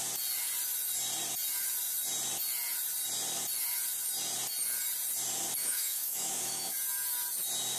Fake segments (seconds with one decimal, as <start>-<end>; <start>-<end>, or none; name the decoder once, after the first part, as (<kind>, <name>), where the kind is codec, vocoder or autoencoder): 5.6-6.7 (autoencoder, DAC-VAE)